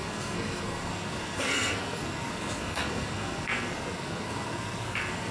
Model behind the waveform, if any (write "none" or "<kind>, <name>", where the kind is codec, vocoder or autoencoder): codec, SNAC